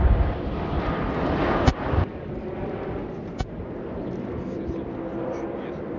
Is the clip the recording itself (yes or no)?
yes